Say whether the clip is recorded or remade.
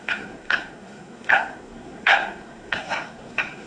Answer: remade